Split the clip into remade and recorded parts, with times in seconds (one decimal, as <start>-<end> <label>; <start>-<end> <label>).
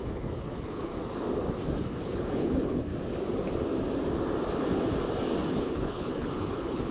0.0-0.9 remade; 0.9-1.8 recorded; 1.8-2.9 remade; 2.9-5.5 recorded; 5.5-6.9 remade